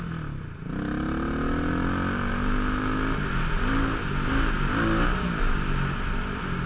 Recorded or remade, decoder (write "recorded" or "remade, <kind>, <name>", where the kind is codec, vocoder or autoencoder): recorded